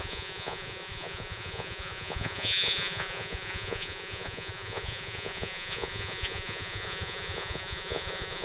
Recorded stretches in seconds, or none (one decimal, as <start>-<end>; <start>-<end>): none